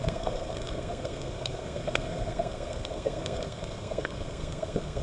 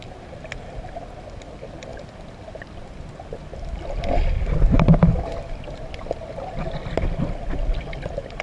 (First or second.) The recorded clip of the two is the second